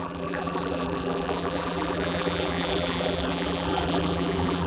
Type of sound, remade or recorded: remade